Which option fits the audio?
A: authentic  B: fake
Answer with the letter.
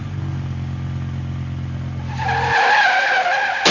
A